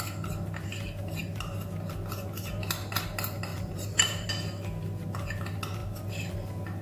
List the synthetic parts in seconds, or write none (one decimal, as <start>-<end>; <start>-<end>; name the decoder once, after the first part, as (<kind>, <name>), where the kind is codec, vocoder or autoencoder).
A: 3.5-4.3 (vocoder, BigVGAN v2)